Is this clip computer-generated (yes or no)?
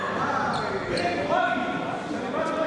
no